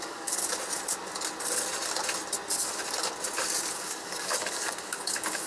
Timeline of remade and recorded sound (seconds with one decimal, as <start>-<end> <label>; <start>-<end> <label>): 0.0-0.4 remade; 0.4-3.7 recorded; 3.7-5.5 remade